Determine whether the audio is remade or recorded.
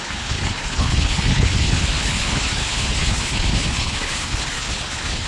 remade